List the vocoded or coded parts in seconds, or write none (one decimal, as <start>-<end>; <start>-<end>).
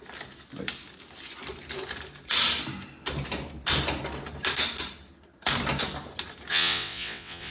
6.5-7.5